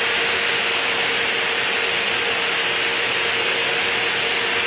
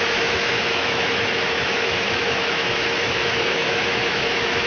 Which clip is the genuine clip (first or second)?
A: first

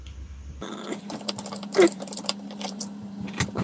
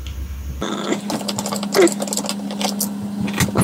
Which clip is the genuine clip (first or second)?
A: second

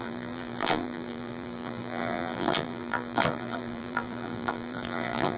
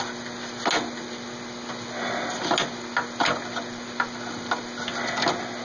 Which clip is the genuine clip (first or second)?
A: second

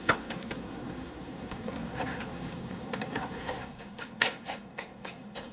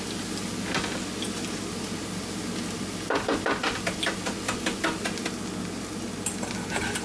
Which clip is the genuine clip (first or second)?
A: second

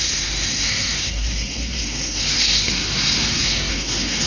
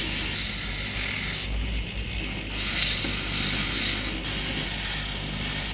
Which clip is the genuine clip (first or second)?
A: second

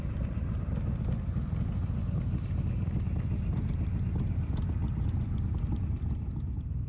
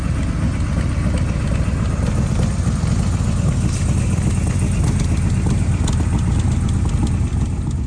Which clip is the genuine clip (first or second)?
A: second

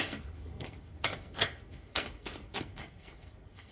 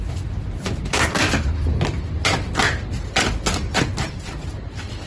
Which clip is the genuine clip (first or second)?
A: second